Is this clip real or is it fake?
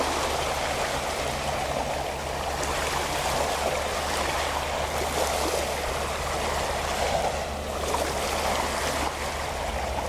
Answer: real